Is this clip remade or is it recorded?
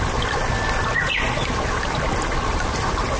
recorded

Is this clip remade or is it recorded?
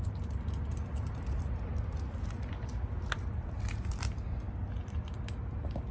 recorded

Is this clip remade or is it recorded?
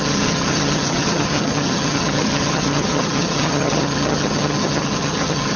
remade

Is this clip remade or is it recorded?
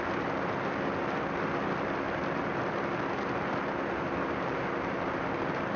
recorded